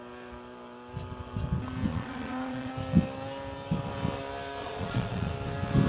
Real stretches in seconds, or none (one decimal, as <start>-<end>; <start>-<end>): 0.0-1.9; 2.7-4.6; 5.3-5.9